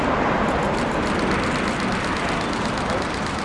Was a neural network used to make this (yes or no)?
no